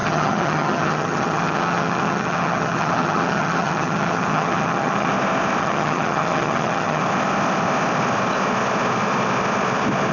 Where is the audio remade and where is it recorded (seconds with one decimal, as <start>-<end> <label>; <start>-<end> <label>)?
0.0-5.1 remade; 5.1-5.6 recorded; 5.6-7.0 remade; 7.0-10.1 recorded